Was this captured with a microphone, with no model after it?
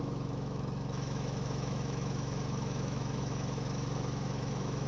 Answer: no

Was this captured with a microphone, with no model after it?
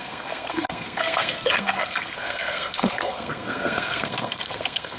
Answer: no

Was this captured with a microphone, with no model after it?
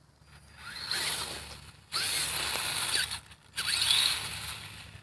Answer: yes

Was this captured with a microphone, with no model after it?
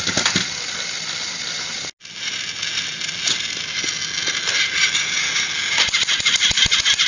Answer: yes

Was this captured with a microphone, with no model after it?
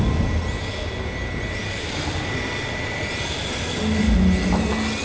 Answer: yes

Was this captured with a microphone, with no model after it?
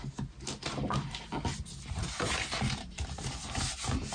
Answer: yes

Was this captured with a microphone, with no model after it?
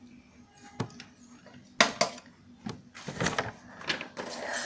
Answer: yes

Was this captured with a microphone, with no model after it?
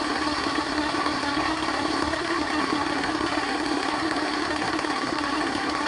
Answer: no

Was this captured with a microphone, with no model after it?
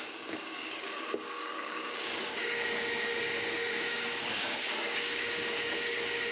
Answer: no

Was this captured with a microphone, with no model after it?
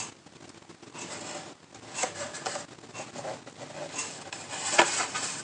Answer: yes